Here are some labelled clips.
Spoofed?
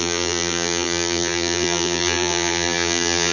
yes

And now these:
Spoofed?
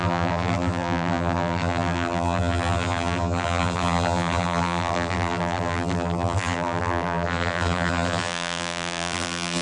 yes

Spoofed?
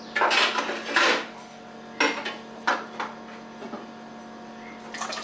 no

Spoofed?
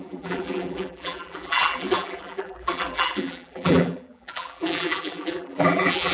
yes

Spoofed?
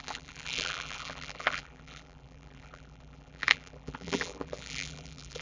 yes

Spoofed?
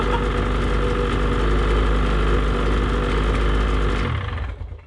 no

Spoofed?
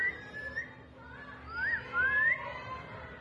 no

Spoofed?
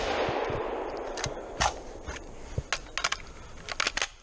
no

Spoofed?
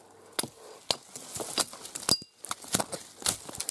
no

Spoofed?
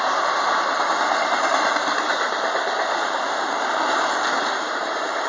yes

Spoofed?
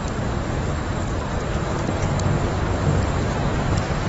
no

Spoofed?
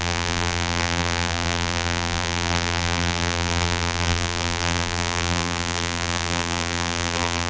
yes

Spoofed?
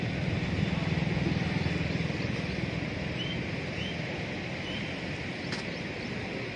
no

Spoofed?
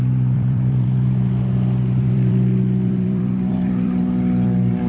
yes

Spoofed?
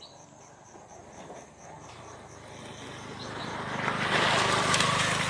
yes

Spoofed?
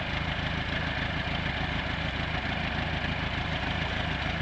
no